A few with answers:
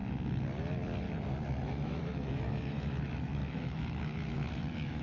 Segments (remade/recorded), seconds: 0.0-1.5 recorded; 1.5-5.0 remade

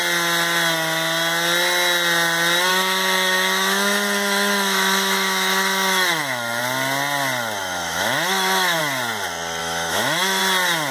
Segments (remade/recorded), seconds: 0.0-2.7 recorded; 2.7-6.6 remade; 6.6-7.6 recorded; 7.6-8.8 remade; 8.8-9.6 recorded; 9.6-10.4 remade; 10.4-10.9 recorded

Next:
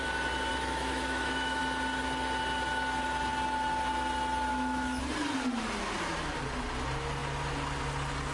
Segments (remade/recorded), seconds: 0.0-0.5 recorded; 0.5-1.6 remade; 1.6-4.5 recorded; 4.5-5.0 remade; 5.0-8.3 recorded

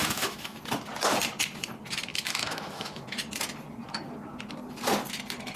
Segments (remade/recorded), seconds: 0.0-0.6 remade; 0.6-2.1 recorded; 2.1-3.0 remade; 3.0-5.6 recorded

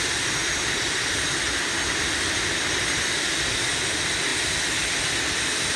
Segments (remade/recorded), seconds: 0.0-5.8 recorded

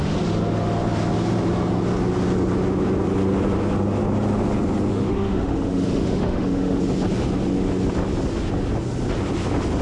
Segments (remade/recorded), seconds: 0.0-4.9 recorded; 4.9-6.8 remade; 6.8-9.8 recorded